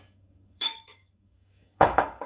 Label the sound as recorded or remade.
remade